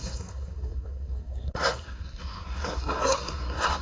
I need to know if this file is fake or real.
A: fake